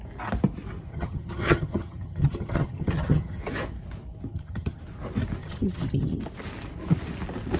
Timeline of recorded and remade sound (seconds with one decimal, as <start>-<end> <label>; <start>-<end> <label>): 0.0-0.9 recorded; 0.9-3.4 remade; 3.4-4.3 recorded; 4.3-4.8 remade; 4.8-5.4 recorded; 5.4-6.2 remade; 6.2-7.6 recorded